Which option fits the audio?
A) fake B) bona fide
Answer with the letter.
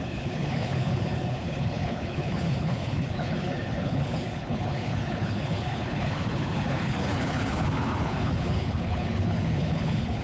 A